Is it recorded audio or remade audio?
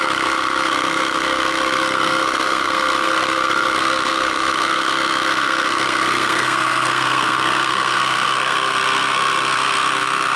remade